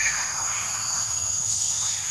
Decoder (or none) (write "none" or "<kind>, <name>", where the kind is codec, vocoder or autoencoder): autoencoder, DAC-VAE